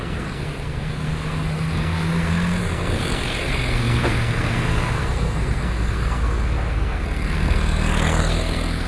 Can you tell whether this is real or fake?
fake